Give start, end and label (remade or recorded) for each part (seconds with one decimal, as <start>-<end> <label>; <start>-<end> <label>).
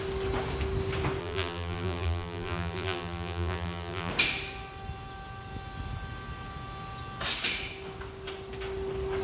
0.0-1.2 recorded; 1.2-4.1 remade; 4.1-9.2 recorded